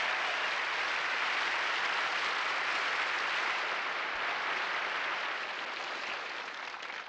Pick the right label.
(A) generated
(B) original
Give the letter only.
B